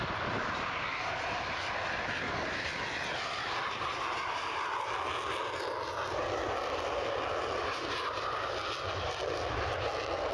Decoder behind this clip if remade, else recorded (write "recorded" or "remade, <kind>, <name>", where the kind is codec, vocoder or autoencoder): recorded